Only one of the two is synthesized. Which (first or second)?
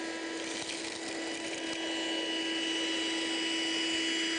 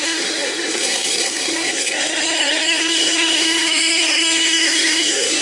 second